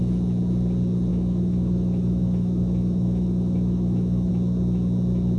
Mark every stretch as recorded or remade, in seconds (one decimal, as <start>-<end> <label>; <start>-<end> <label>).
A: 0.0-1.1 recorded; 1.1-4.3 remade; 4.3-5.4 recorded